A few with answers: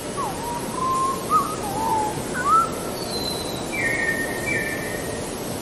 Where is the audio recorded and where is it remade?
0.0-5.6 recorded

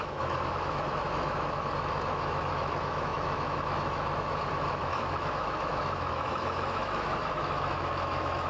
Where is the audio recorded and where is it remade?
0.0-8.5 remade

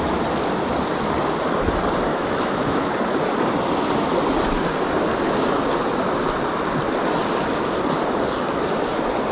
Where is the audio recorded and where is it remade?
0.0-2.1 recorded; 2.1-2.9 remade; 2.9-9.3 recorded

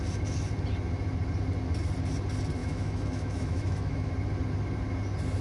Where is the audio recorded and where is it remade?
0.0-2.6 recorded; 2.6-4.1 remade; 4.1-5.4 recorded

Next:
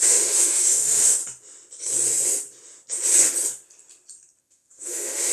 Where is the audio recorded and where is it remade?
0.0-1.2 remade; 1.2-4.4 recorded; 4.4-5.3 remade